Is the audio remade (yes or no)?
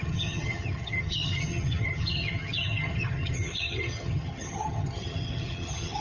yes